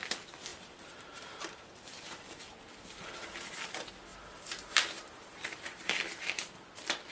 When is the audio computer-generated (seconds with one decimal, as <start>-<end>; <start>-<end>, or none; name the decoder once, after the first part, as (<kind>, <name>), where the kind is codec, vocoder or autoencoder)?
0.5-2.8 (vocoder, BigVGAN v2); 4.1-6.0